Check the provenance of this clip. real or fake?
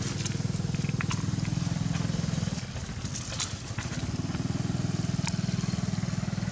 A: real